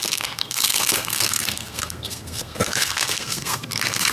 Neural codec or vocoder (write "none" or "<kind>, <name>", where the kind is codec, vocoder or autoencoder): codec, SNAC